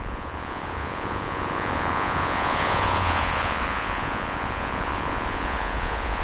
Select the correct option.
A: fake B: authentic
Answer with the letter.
A